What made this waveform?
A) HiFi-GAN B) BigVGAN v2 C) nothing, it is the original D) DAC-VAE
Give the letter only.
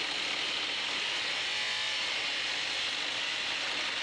B